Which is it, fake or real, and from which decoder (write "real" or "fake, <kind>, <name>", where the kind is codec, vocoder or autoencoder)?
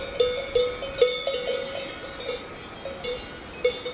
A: real